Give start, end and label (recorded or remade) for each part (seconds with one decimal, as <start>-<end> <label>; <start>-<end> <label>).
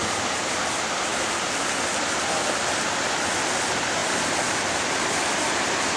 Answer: 0.0-6.0 recorded